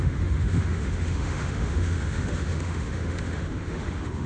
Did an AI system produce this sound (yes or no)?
yes